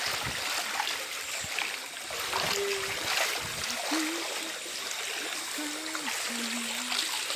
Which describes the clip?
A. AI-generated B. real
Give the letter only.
B